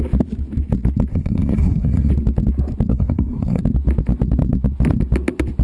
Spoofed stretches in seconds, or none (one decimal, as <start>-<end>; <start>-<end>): 1.1-2.1; 2.9-3.6